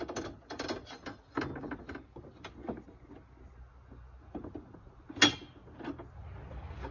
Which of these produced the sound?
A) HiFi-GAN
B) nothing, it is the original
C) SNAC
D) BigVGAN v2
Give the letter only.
B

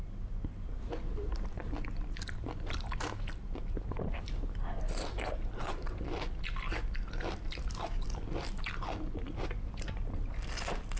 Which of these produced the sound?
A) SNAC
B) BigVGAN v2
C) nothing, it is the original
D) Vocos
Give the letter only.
C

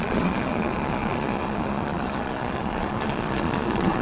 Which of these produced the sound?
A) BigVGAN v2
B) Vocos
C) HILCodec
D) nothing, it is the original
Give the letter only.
B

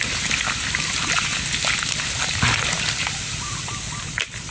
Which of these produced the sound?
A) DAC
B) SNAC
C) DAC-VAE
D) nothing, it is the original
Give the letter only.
D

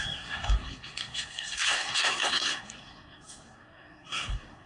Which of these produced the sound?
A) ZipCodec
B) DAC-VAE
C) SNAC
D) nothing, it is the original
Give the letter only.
C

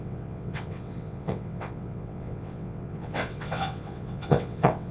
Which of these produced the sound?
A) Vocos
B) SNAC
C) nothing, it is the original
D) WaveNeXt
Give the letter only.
D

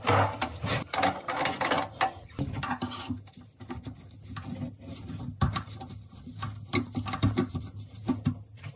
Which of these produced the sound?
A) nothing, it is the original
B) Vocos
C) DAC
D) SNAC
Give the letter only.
A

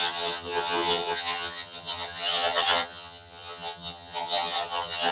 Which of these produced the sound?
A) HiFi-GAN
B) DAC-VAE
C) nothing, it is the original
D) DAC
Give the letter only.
A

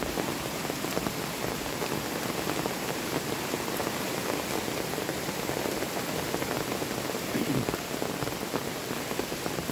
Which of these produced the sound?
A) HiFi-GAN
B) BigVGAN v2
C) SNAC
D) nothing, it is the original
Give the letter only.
D